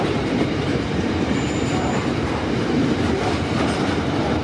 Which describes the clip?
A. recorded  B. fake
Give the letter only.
B